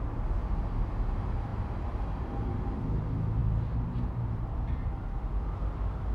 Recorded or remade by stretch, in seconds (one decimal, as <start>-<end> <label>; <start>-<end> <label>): 0.0-6.1 recorded